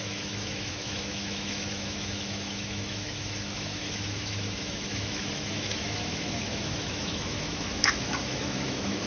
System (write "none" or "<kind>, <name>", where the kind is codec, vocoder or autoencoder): autoencoder, DAC-VAE